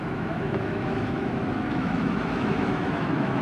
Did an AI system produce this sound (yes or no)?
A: yes